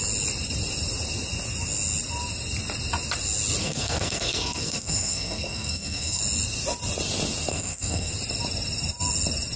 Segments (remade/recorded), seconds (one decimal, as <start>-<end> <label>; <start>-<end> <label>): 0.0-3.6 recorded; 3.6-6.2 remade; 6.2-7.5 recorded; 7.5-8.1 remade; 8.1-9.6 recorded